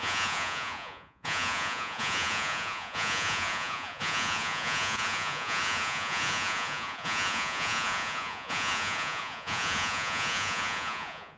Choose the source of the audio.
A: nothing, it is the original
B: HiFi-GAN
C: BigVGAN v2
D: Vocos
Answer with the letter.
D